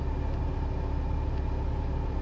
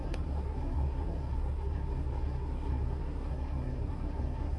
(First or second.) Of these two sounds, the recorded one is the first